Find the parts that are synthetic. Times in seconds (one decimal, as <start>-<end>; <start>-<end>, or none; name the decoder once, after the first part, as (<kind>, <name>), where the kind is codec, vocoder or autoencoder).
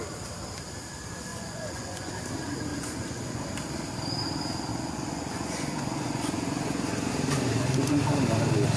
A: 1.3-2.1 (vocoder, Vocos); 2.7-3.4; 4.7-7.1